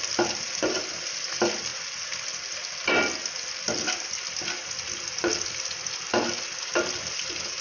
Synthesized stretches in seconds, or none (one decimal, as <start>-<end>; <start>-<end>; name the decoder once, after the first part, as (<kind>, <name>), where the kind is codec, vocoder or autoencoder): none